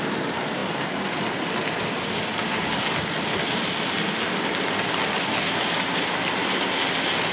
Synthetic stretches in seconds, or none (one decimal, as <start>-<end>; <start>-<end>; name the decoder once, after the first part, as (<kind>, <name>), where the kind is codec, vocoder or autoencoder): none

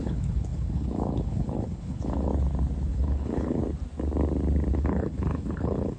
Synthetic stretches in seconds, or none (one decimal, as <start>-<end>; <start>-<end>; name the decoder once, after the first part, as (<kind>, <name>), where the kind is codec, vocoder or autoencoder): 0.0-2.3 (codec, HILCodec); 2.9-3.6; 4.7-6.0

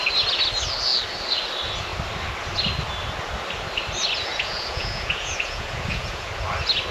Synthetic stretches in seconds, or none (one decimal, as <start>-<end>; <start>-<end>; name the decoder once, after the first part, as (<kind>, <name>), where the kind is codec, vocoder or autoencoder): 4.3-6.3 (vocoder, Vocos)

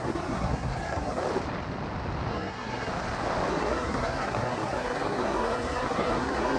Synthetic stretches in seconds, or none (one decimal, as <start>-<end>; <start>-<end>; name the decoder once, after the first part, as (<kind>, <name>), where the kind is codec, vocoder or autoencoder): 0.0-1.2 (codec, SNAC); 2.3-2.9; 3.5-6.6

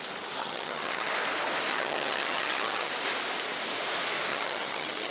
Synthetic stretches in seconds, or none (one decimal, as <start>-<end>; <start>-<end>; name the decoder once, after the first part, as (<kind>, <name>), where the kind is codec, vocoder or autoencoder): 0.4-1.1 (vocoder, HiFi-GAN); 1.7-2.9; 4.3-5.1

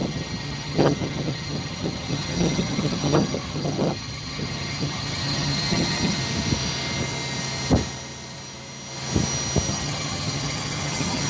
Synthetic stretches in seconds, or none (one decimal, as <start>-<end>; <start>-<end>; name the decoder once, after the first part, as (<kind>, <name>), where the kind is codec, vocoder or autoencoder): 0.0-6.2 (vocoder, HiFi-GAN); 9.7-11.3

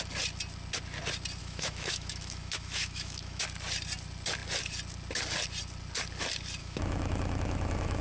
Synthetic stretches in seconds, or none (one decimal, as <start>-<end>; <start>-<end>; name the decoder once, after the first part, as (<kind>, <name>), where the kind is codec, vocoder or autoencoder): 1.4-3.4 (autoencoder, DAC-VAE); 6.6-8.0